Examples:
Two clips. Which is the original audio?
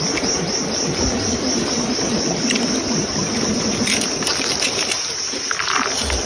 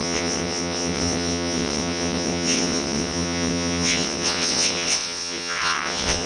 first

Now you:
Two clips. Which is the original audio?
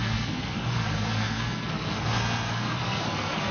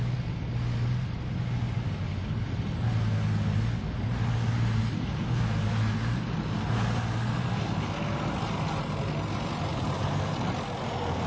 second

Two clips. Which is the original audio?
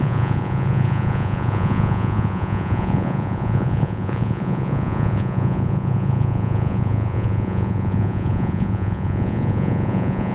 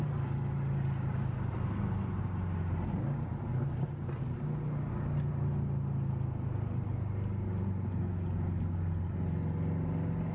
second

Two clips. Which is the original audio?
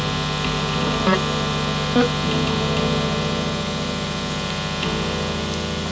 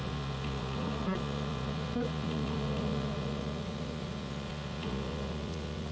first